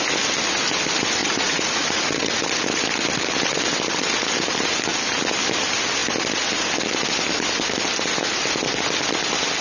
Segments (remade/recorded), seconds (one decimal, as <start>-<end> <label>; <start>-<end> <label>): 0.0-1.2 recorded; 1.2-2.4 remade; 2.4-9.6 recorded